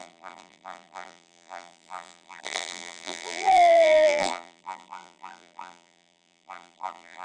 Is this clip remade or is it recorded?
remade